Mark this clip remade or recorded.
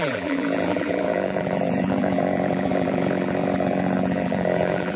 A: remade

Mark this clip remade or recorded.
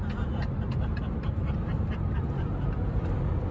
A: recorded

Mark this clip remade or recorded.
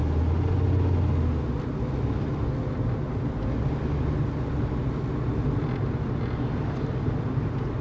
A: recorded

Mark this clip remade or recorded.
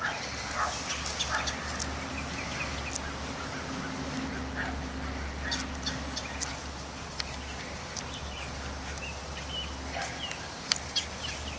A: recorded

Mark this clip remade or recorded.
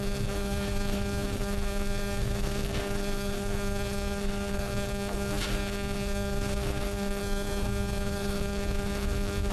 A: remade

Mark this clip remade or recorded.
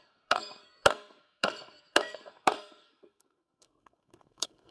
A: remade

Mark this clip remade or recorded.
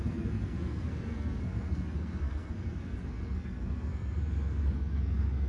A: remade